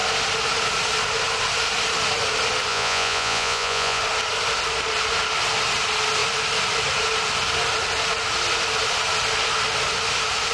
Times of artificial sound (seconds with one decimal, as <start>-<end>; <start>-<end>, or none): 2.7-4.0